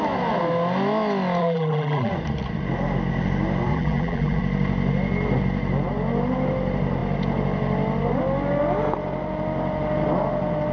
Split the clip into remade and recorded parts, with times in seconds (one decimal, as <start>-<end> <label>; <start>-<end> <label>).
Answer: 0.0-1.4 recorded; 1.4-2.1 remade; 2.1-3.7 recorded; 3.7-4.4 remade; 4.4-10.7 recorded